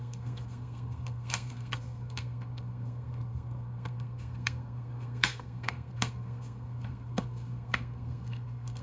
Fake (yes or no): yes